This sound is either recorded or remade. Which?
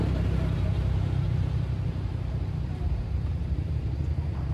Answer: remade